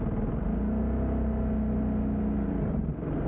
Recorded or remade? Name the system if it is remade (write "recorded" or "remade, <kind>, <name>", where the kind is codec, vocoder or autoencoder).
recorded